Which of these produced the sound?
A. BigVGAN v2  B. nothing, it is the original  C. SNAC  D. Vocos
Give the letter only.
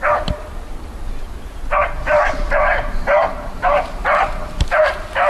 A